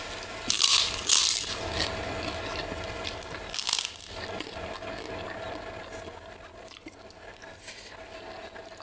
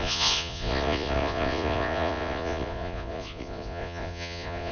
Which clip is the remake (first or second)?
second